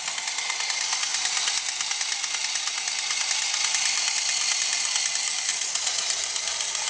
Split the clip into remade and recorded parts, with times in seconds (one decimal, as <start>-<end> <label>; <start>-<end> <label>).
0.0-5.5 recorded; 5.5-6.1 remade; 6.1-6.9 recorded